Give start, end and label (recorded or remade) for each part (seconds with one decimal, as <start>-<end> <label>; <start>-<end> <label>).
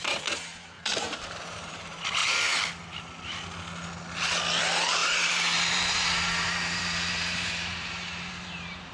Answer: 0.0-2.2 remade; 2.2-4.6 recorded; 4.6-8.9 remade